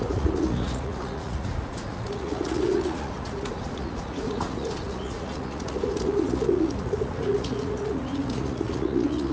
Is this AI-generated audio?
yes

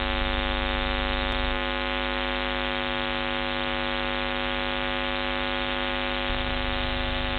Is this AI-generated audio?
no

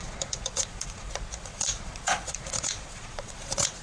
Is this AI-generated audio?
yes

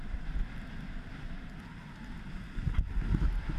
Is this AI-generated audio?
no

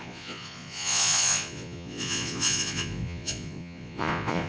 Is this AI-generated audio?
yes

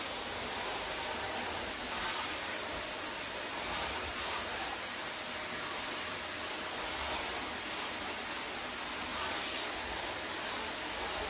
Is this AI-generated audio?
no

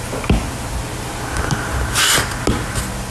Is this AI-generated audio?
no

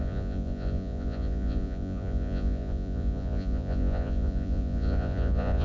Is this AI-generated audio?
yes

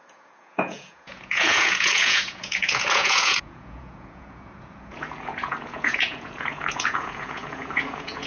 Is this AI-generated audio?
yes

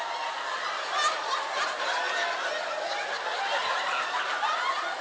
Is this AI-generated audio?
no